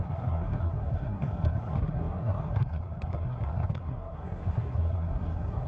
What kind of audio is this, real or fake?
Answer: fake